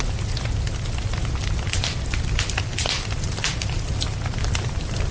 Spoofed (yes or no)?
no